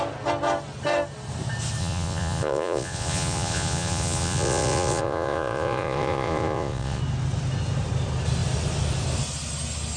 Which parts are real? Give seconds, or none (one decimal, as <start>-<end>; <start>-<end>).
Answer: 0.0-1.8; 7.0-10.0